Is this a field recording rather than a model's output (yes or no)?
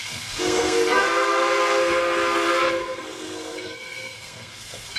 no